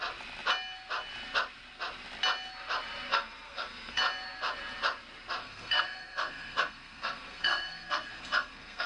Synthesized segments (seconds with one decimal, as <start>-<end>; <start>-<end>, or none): 3.1-4.0; 5.4-8.9